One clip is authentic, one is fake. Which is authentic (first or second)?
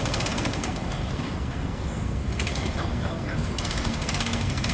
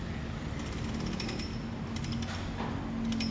second